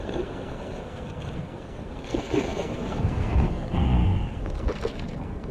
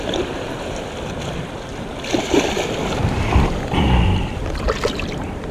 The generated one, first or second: first